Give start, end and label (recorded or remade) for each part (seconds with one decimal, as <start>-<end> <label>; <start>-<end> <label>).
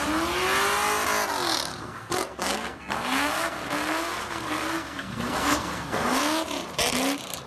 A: 0.0-1.7 recorded; 1.7-6.2 remade; 6.2-7.5 recorded